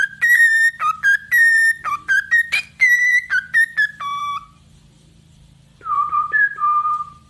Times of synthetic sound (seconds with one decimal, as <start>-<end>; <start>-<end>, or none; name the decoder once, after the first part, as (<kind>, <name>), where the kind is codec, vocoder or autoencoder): 0.0-7.3 (vocoder, BigVGAN v2)